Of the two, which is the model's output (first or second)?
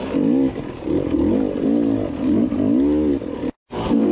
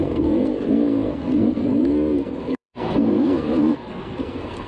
second